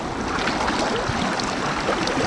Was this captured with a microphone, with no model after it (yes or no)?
yes